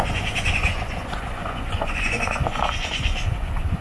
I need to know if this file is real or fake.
fake